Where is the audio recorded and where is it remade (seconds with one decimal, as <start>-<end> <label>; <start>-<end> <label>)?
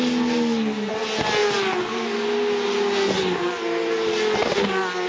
0.0-5.1 recorded